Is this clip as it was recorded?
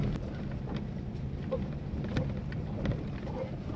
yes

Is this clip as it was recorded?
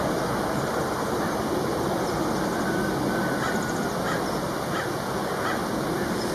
yes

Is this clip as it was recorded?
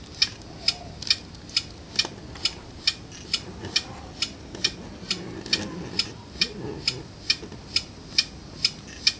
yes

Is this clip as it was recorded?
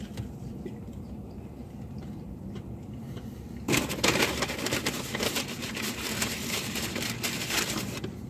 no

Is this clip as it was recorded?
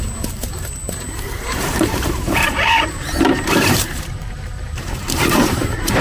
no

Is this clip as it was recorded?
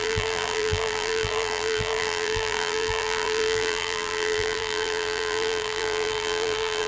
no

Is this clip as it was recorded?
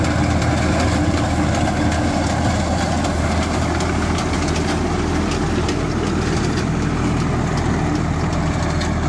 yes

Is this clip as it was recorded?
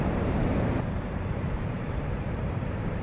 no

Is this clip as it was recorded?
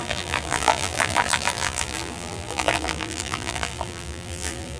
no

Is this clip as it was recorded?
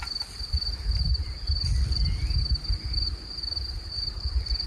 yes